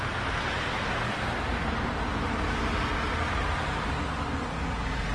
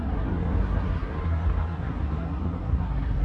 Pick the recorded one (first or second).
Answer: first